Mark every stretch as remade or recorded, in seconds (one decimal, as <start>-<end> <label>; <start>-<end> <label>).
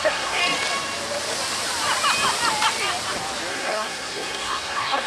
0.0-0.4 remade; 0.4-3.5 recorded; 3.5-5.1 remade